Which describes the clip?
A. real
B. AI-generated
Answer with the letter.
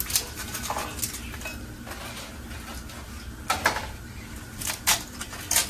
A